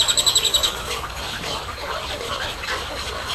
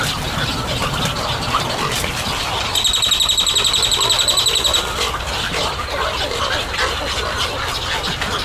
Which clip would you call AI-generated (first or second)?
first